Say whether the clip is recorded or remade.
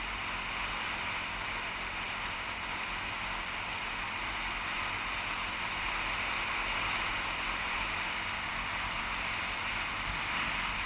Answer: recorded